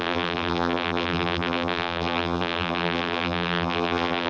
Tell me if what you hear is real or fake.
fake